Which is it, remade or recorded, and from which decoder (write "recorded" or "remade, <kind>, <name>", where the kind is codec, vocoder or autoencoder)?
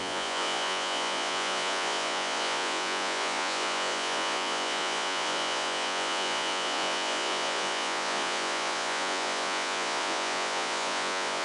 remade, vocoder, Vocos